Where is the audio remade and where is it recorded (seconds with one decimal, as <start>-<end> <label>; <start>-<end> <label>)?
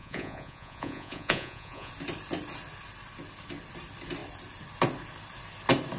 0.0-1.9 remade; 1.9-6.0 recorded